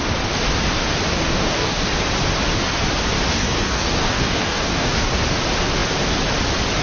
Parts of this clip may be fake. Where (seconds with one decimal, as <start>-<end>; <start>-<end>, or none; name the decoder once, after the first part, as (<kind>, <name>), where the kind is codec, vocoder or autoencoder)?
1.1-1.9 (codec, DAC); 3.3-5.2